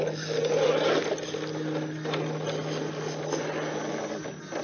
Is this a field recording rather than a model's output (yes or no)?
yes